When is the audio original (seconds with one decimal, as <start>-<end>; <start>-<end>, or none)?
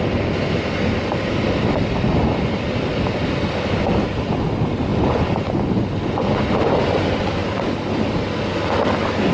0.0-2.1; 3.4-7.4; 8.2-9.3